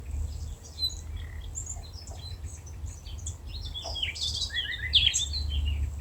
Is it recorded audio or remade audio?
recorded